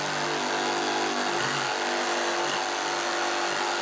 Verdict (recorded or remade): recorded